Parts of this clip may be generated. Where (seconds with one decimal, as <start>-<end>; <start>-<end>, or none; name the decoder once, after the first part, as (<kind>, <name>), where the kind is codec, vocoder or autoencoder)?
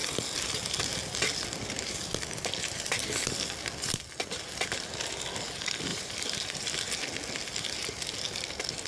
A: 5.9-6.7 (vocoder, BigVGAN v2)